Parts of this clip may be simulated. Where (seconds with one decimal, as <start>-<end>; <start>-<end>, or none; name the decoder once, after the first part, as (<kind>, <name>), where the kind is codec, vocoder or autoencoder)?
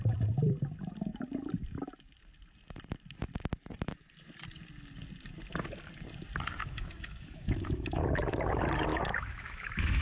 6.6-8.0 (autoencoder, DAC-VAE); 8.9-10.0